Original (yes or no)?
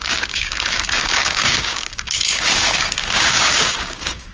no